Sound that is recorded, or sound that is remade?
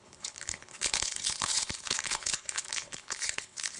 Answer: remade